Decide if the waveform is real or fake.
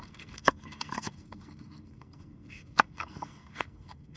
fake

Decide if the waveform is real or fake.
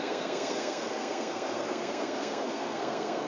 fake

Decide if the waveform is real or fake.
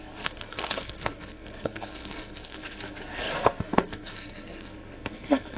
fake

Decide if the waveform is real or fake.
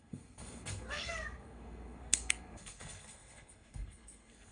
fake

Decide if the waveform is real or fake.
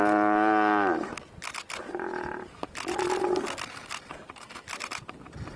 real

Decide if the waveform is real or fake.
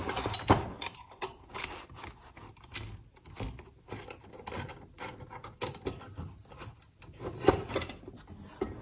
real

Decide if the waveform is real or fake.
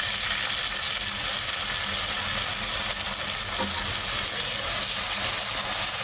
real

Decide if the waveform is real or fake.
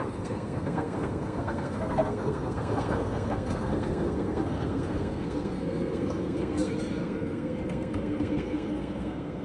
fake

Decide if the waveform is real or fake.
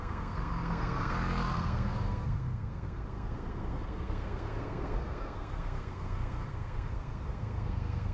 fake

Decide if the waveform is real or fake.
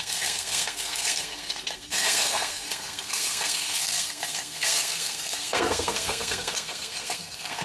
fake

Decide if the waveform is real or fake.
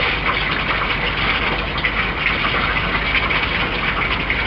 real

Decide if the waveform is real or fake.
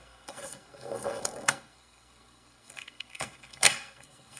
fake